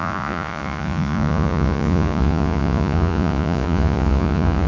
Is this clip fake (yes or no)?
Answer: yes